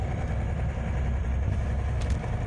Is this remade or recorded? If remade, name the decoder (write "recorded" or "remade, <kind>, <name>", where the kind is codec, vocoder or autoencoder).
remade, vocoder, BigVGAN v2